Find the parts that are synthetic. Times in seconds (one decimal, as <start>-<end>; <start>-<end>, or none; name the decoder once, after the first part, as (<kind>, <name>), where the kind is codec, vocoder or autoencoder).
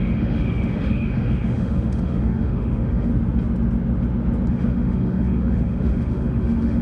0.0-3.1 (autoencoder, DAC-VAE); 4.5-6.8